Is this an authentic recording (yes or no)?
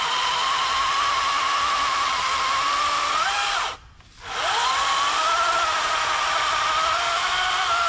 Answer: no